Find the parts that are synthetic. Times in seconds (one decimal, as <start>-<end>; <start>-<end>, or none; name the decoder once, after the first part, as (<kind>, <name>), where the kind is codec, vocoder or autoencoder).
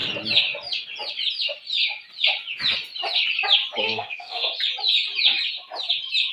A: 3.8-4.5 (codec, SNAC)